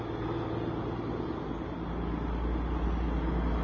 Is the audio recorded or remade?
recorded